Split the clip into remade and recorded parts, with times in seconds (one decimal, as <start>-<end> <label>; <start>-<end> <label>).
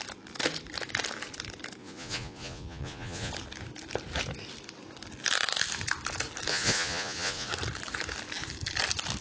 0.0-1.8 recorded; 1.8-3.3 remade; 3.3-6.5 recorded; 6.5-7.5 remade; 7.5-9.2 recorded